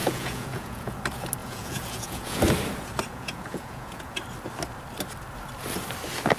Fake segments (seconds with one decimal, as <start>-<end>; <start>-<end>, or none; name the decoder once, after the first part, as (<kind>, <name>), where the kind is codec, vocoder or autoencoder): 0.0-1.0 (vocoder, Vocos); 1.4-2.4; 3.1-4.2